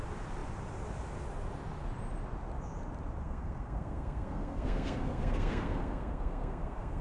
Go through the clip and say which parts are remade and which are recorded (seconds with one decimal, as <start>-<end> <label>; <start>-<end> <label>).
0.0-3.2 recorded; 3.2-7.0 remade